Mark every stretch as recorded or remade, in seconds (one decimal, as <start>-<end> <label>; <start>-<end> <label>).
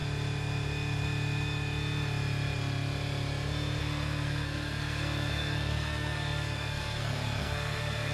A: 0.0-3.8 recorded; 3.8-8.1 remade